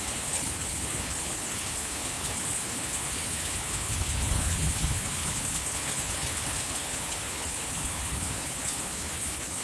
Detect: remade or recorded remade